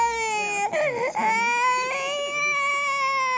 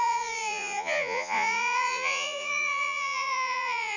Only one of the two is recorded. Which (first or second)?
first